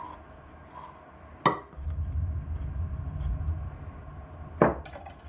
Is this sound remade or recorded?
recorded